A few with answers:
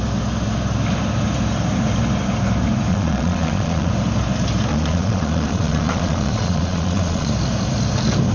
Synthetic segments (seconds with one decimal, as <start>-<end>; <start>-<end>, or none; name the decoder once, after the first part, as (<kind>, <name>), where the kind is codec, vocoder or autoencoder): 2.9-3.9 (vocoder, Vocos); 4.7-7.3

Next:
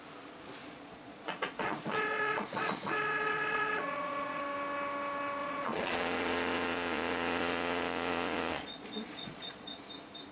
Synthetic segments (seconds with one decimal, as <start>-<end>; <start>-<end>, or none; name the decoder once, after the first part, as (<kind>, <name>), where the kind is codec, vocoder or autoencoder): 0.6-4.4 (vocoder, Vocos); 5.4-9.8

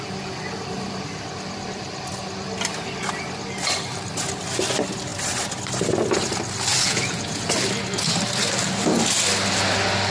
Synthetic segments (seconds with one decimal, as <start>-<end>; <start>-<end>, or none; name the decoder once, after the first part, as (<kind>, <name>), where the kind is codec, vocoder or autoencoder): 6.7-7.5 (vocoder, Vocos)

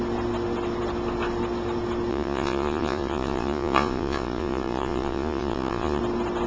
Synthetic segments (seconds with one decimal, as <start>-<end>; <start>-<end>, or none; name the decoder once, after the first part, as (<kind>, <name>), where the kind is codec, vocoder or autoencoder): 2.1-6.0 (vocoder, Vocos)

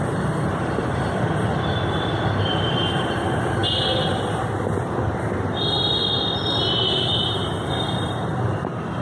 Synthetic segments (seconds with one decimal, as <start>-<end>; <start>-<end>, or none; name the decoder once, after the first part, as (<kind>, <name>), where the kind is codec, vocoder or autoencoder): none

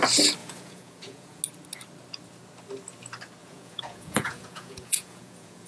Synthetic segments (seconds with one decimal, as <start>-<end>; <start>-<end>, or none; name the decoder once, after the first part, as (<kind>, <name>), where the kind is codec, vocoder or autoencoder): 0.4-1.4 (vocoder, Vocos); 3.4-5.7

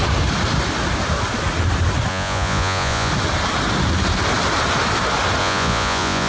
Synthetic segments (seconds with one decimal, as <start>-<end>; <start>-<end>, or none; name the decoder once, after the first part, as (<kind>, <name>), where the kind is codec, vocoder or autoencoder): 2.1-3.1 (vocoder, Vocos); 5.4-6.3

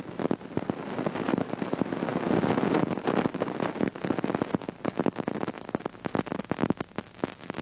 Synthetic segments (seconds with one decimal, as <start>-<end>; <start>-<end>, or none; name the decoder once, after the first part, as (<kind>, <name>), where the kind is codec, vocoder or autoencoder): none